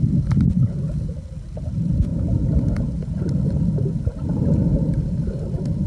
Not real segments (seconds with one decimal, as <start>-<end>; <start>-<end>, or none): none